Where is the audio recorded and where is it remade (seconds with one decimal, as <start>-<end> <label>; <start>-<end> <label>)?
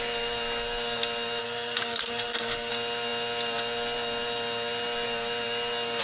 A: 0.0-1.4 recorded; 1.4-2.7 remade; 2.7-6.0 recorded